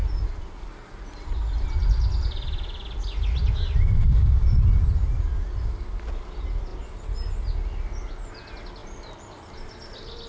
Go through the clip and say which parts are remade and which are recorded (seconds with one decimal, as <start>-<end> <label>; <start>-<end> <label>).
0.0-10.3 recorded